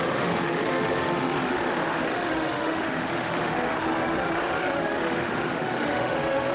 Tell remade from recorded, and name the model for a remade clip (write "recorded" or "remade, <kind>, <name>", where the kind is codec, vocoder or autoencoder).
remade, autoencoder, DAC-VAE